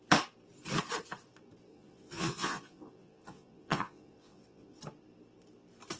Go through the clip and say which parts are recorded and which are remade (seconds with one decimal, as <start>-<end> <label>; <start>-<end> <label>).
0.0-1.7 recorded; 1.7-4.8 remade; 4.8-6.0 recorded